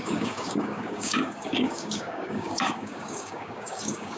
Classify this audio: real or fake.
fake